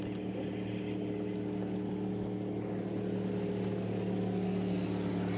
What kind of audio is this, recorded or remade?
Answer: recorded